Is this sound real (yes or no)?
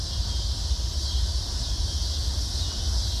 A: yes